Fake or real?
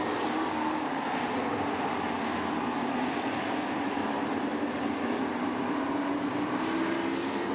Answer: real